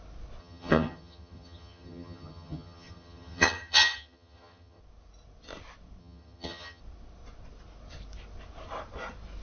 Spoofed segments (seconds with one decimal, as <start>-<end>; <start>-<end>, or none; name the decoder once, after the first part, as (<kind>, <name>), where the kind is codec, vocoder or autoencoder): 0.4-4.8 (vocoder, HiFi-GAN); 6.0-6.8